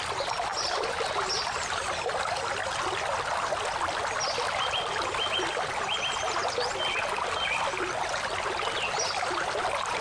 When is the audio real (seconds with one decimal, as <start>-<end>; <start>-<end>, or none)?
0.0-10.0